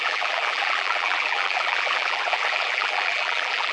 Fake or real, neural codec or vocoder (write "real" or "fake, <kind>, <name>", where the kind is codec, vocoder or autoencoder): fake, vocoder, BigVGAN v2